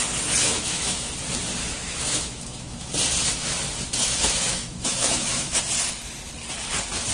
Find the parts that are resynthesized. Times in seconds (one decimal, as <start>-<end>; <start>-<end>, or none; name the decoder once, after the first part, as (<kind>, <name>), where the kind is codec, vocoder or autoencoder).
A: 0.4-1.1 (autoencoder, DAC-VAE); 1.6-2.9; 4.0-5.6

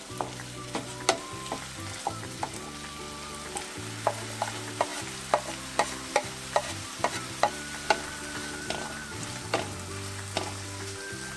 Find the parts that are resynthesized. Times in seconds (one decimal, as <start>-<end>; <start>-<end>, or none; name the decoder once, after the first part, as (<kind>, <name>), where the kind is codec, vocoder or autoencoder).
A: none

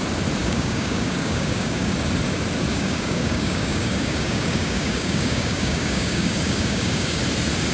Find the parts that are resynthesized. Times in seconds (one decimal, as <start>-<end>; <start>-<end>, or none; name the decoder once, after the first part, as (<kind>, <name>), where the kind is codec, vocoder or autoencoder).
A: 0.4-1.9 (codec, DAC); 2.7-7.2

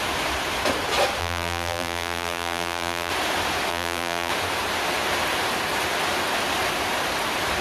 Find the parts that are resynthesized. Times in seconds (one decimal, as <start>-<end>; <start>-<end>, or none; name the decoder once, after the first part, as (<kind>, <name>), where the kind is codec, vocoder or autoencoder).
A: 1.2-3.1 (vocoder, BigVGAN v2); 3.7-4.3

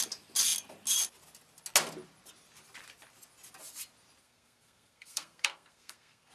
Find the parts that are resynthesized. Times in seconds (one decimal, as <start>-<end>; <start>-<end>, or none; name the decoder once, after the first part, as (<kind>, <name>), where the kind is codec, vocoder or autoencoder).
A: 4.2-6.3 (codec, SNAC)

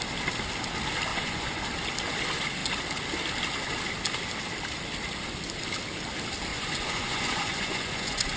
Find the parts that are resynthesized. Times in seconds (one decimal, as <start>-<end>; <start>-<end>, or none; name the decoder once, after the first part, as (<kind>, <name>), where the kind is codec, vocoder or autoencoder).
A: 1.1-1.6 (vocoder, Vocos); 6.5-8.4

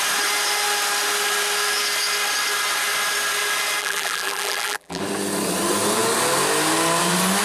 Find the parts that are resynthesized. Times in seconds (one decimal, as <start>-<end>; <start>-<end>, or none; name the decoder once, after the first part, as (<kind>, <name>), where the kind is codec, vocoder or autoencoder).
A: 3.8-5.0 (vocoder, BigVGAN v2)

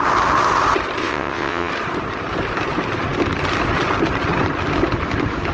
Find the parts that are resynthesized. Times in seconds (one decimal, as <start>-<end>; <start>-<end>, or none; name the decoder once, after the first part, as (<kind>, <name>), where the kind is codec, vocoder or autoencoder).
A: 1.0-1.7 (vocoder, WaveNeXt)